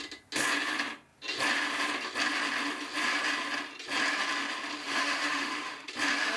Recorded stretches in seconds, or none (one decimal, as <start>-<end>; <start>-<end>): 0.0-4.8; 5.9-6.4